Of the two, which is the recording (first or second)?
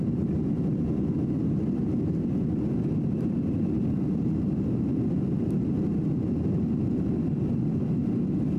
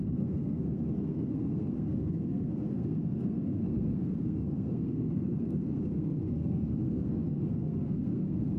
first